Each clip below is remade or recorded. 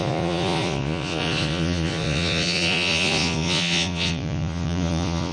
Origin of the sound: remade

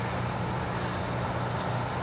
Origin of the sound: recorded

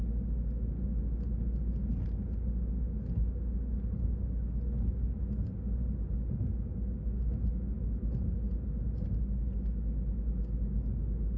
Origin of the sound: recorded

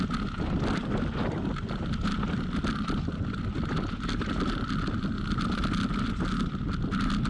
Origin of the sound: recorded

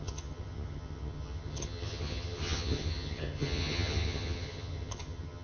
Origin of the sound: remade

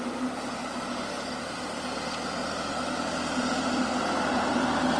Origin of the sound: recorded